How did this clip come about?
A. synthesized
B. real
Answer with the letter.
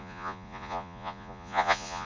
A